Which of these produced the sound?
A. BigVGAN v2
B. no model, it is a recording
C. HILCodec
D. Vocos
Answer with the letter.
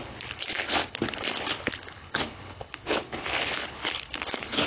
C